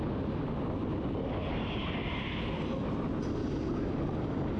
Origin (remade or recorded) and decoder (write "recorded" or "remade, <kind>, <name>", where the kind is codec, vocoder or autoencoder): recorded